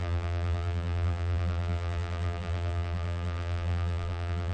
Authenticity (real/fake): fake